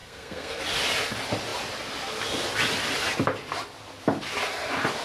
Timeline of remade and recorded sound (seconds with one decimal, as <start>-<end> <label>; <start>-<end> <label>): 0.0-0.6 remade; 0.6-5.0 recorded

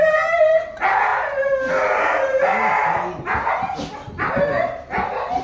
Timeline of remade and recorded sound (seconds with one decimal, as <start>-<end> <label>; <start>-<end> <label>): 0.0-5.4 recorded